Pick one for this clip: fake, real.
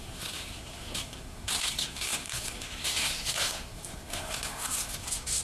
fake